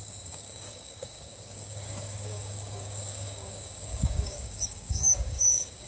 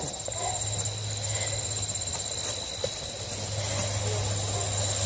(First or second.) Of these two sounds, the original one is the second